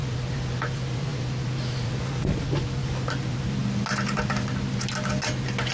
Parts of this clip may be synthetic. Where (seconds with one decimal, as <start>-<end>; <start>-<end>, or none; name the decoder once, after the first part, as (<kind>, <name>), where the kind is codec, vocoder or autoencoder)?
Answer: none